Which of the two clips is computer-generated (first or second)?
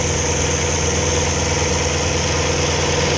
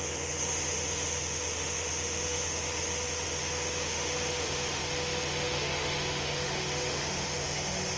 second